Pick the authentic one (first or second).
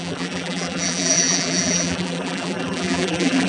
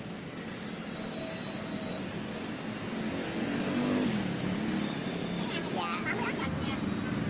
second